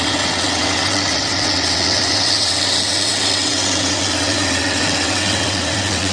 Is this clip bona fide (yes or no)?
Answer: no